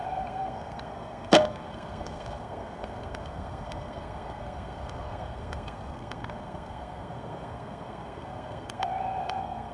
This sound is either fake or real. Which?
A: fake